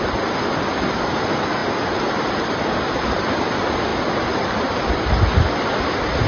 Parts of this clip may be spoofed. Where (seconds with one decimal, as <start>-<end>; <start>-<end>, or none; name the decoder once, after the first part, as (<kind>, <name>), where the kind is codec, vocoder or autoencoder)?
none